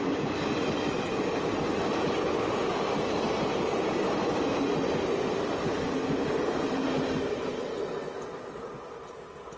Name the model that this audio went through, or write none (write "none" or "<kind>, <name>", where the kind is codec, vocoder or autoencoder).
none